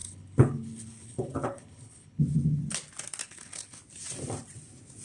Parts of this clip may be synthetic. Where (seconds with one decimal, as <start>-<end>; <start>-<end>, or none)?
0.0-2.2; 3.2-3.8